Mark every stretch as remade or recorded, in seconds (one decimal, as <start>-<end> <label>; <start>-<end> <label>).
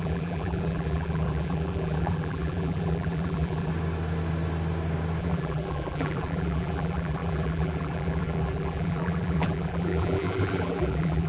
0.0-3.7 remade; 3.7-5.2 recorded; 5.2-11.3 remade